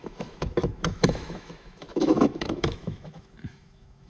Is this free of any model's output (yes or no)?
no